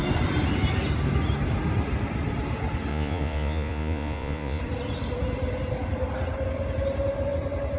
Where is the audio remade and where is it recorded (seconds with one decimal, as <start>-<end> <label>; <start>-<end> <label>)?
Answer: 0.0-2.9 recorded; 2.9-4.6 remade; 4.6-7.8 recorded